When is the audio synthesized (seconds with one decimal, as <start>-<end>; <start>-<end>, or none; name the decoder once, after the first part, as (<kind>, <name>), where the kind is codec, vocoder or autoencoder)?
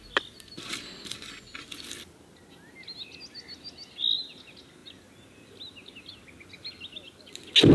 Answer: none